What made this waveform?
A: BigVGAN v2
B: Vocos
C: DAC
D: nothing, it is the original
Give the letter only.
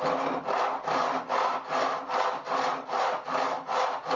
D